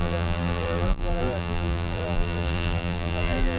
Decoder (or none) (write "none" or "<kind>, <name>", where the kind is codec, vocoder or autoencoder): vocoder, BigVGAN v2